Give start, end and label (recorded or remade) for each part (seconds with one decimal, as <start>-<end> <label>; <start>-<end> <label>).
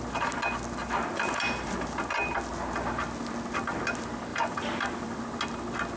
0.0-1.1 recorded; 1.1-2.0 remade; 2.0-4.3 recorded; 4.3-5.2 remade; 5.2-6.0 recorded